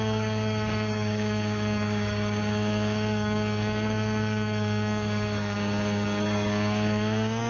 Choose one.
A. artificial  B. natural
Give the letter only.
A